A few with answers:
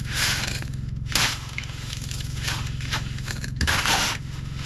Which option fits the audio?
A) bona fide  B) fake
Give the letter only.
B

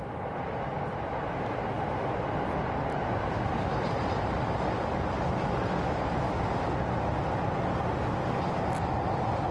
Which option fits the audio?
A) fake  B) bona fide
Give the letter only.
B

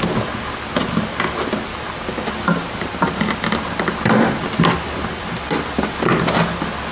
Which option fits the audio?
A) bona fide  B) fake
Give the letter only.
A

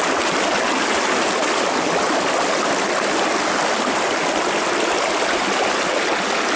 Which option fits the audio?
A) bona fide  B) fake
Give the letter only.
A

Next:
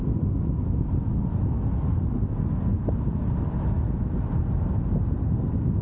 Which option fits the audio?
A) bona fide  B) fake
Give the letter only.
A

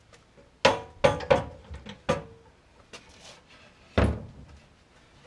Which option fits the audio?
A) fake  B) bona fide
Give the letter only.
B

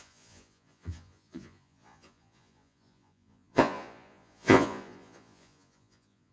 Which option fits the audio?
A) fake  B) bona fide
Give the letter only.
A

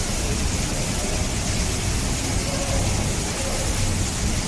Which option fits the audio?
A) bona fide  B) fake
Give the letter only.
A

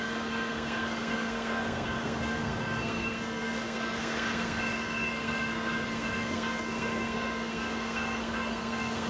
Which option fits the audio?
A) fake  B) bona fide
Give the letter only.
A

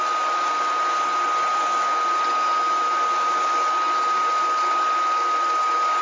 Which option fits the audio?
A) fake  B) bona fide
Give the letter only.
B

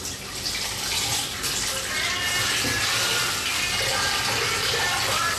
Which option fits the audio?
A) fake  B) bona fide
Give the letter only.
B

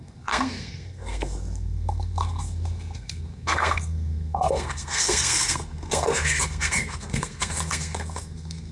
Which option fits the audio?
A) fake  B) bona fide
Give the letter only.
A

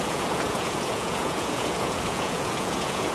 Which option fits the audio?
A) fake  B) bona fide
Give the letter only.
A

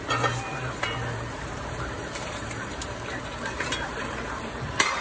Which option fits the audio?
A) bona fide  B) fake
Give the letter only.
B